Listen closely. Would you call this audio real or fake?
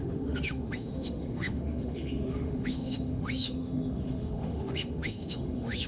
fake